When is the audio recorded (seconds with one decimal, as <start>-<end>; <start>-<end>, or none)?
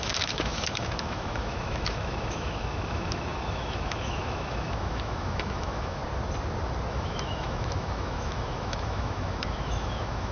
6.0-6.9